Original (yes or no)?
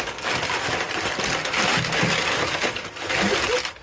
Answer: yes